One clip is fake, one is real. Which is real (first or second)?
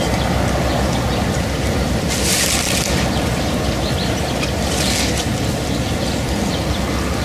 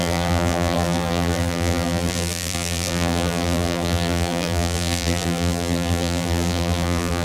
first